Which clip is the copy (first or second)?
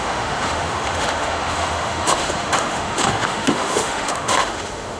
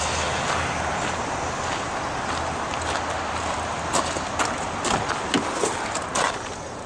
first